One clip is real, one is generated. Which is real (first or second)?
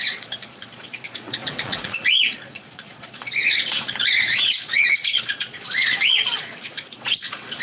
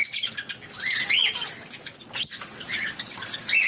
second